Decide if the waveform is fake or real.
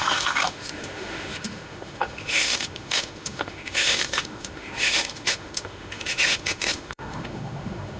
fake